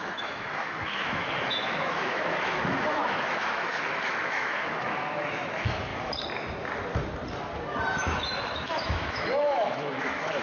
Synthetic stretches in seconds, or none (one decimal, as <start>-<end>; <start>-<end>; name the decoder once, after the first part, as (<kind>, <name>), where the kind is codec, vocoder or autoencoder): 0.0-5.9 (autoencoder, DAC-VAE); 7.9-10.4